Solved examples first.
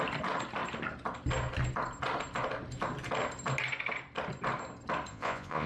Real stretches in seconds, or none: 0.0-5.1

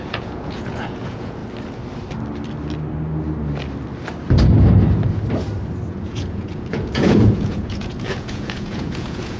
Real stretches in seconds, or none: 1.4-5.9

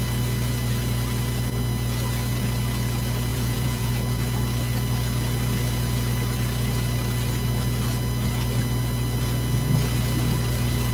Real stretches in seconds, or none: 0.0-3.3; 3.9-10.9

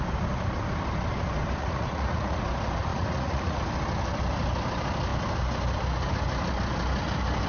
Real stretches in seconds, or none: 0.0-1.6; 2.4-2.9; 3.6-7.5

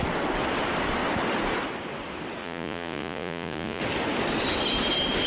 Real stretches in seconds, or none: 0.0-2.4; 3.8-5.3

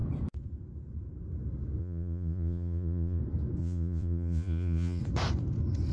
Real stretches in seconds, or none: 0.0-1.8; 3.2-3.6; 5.0-5.9

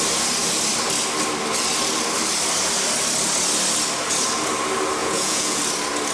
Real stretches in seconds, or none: 0.0-5.0; 5.6-6.1